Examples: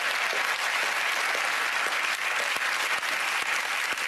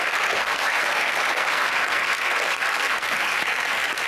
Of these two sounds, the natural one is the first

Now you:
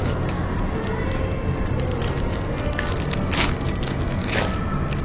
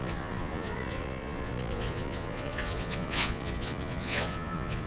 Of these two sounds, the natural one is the first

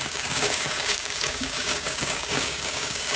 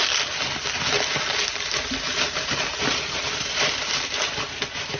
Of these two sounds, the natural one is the second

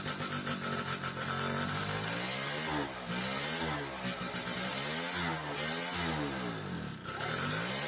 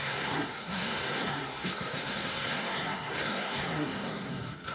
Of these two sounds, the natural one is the first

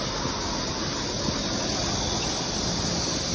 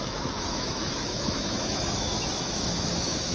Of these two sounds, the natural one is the first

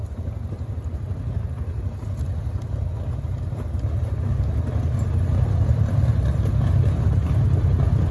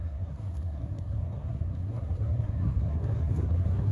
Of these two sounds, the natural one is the first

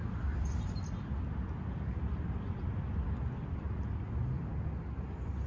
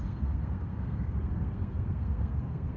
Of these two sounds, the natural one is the first